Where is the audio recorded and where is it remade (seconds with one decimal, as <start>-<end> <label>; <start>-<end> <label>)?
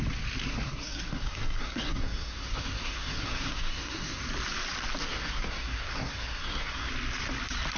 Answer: 0.0-0.5 recorded; 0.5-4.2 remade; 4.2-5.0 recorded; 5.0-6.9 remade; 6.9-7.8 recorded